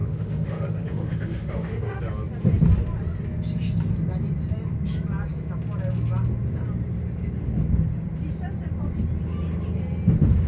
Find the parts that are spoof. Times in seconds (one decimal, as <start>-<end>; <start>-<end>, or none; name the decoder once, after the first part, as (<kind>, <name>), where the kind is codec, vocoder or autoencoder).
0.0-2.0 (autoencoder, DAC-VAE)